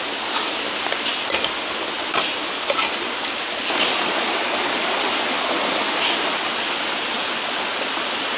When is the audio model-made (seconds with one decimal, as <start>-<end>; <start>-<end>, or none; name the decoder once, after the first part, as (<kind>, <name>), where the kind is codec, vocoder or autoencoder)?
none